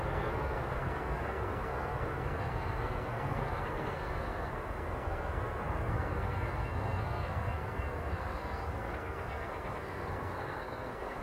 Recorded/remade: remade